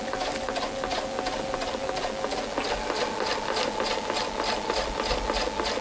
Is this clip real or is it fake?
real